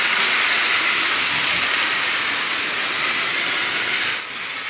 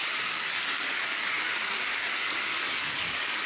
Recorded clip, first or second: first